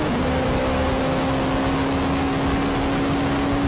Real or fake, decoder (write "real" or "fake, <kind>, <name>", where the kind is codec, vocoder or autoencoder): real